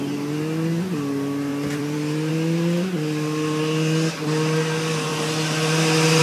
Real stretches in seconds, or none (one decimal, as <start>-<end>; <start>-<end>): 0.0-1.5; 2.3-6.2